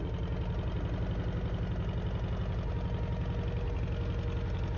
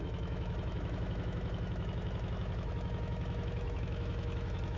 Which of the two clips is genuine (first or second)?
first